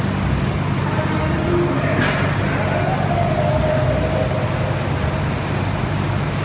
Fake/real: real